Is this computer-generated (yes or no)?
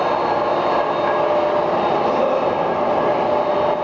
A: no